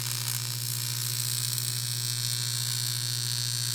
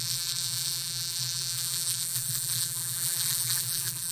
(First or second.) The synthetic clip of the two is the second